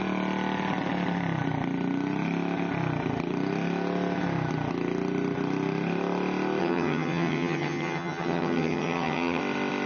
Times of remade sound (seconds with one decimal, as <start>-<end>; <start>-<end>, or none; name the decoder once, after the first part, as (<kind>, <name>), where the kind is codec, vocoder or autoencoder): 6.6-9.4 (vocoder, HiFi-GAN)